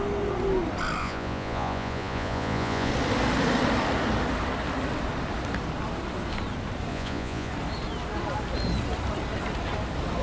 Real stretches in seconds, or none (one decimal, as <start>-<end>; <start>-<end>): 0.0-1.0; 2.9-6.9; 7.5-10.2

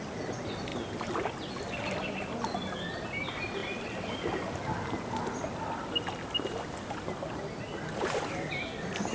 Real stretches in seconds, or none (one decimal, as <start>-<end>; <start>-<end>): 0.0-9.1